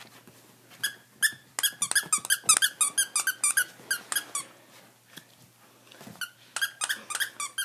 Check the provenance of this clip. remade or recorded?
recorded